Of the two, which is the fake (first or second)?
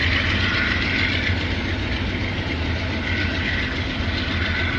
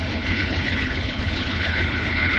second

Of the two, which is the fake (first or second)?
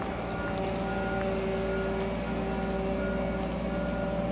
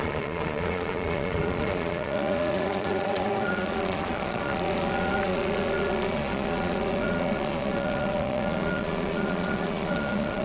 second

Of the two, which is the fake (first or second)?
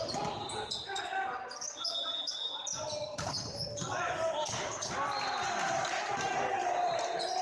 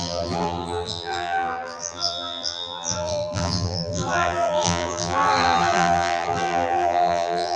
second